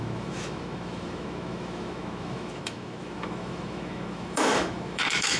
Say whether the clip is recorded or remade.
remade